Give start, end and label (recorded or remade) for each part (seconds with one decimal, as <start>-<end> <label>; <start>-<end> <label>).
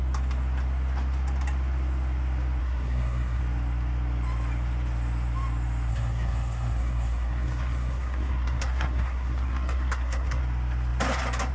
0.0-2.6 recorded; 2.6-3.4 remade; 3.4-5.9 recorded; 5.9-10.4 remade; 10.4-11.5 recorded